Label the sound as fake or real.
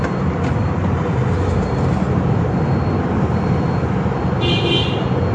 real